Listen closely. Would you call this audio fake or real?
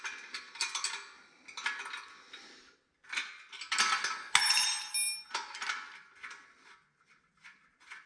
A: real